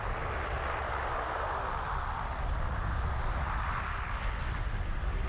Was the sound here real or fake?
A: real